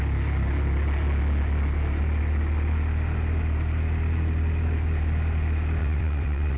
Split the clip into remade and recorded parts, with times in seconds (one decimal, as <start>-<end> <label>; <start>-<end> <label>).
0.0-5.8 recorded; 5.8-6.6 remade

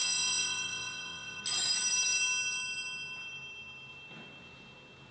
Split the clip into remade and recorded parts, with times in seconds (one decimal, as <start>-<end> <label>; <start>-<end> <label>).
0.0-1.4 remade; 1.4-5.1 recorded

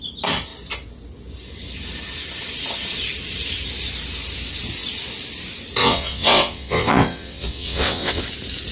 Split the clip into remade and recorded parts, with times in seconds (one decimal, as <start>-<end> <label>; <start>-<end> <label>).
0.0-5.8 recorded; 5.8-8.2 remade; 8.2-8.7 recorded

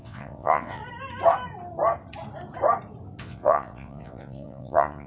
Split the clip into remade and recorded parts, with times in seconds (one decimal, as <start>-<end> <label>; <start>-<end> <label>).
0.0-0.8 remade; 0.8-3.2 recorded; 3.2-5.1 remade

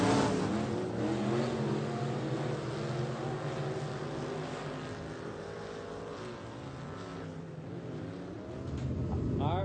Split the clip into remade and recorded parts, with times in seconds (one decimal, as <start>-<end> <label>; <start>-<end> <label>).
0.0-9.6 recorded

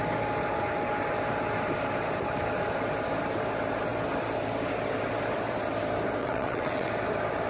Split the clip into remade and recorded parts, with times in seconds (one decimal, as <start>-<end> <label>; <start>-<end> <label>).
0.0-6.2 recorded; 6.2-6.9 remade; 6.9-7.5 recorded

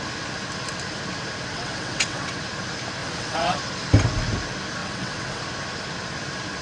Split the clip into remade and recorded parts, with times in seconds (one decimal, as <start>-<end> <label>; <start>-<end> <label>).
0.0-1.5 recorded; 1.5-2.4 remade; 2.4-3.0 recorded; 3.0-3.6 remade; 3.6-4.8 recorded; 4.8-5.4 remade; 5.4-6.6 recorded